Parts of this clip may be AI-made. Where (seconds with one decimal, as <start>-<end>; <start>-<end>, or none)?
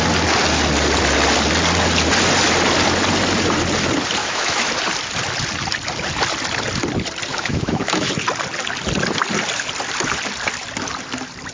4.2-4.7; 7.3-8.1